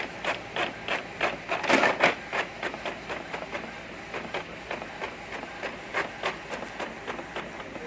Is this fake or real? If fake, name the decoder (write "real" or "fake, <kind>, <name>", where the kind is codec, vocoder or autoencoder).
real